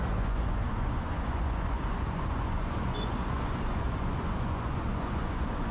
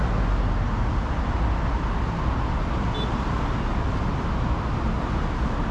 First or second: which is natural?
second